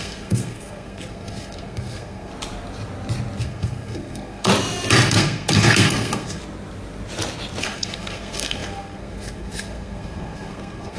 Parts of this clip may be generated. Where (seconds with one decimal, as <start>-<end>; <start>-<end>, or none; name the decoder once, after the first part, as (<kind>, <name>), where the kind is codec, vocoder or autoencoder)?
0.0-2.3 (codec, SNAC); 3.4-4.5; 5.1-6.4; 7.6-11.0